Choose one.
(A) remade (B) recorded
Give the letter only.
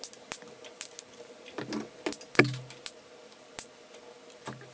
B